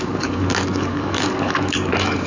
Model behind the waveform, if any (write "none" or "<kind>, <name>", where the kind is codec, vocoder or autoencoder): codec, DAC